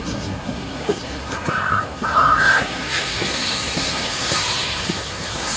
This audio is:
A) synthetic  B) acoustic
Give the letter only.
A